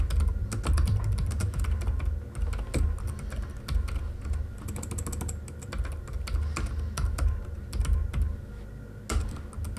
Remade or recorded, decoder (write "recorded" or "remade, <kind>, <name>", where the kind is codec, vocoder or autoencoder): recorded